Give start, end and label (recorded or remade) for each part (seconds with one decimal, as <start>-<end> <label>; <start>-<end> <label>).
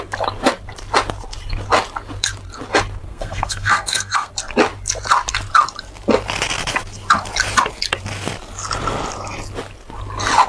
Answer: 0.0-3.1 recorded; 3.1-4.3 remade; 4.3-10.5 recorded